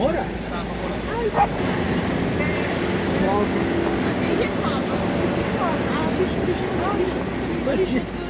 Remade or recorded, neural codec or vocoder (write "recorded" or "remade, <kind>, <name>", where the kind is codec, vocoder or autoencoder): recorded